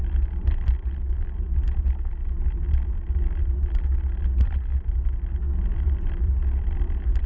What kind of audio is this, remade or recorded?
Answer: recorded